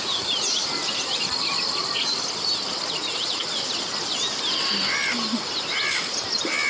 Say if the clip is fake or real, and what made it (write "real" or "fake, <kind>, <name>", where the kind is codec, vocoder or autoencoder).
real